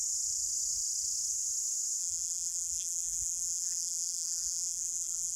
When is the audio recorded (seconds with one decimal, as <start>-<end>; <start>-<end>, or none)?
0.0-2.0